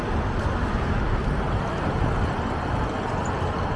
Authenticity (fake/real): real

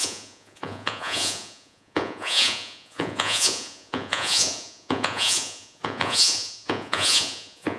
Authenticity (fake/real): fake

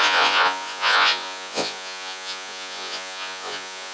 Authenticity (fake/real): fake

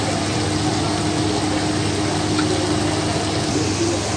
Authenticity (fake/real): real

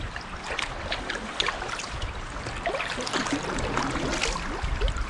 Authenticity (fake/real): real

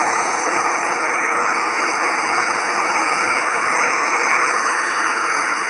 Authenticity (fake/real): fake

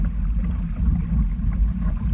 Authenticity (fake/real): real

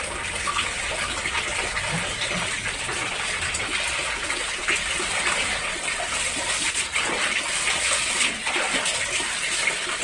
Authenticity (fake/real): real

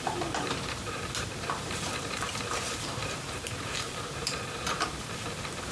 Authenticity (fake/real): fake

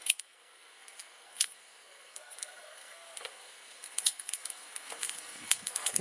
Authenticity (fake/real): fake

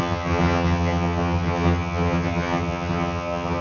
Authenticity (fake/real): fake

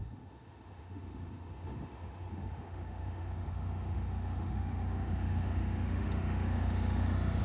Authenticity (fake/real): fake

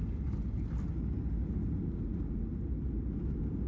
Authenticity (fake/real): real